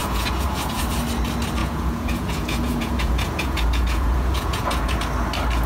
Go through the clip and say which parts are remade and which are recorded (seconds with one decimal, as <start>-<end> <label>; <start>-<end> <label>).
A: 0.0-0.8 remade; 0.8-1.6 recorded; 1.6-5.0 remade; 5.0-5.7 recorded